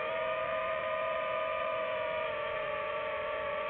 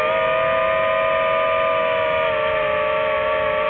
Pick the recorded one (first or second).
second